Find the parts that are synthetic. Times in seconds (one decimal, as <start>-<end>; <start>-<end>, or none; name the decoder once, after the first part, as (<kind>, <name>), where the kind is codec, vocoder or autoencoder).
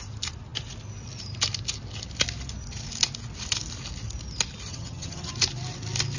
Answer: 4.7-5.3 (vocoder, HiFi-GAN)